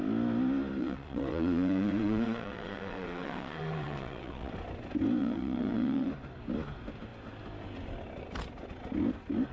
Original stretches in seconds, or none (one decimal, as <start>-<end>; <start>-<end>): 0.0-0.8; 4.5-5.2; 6.1-9.5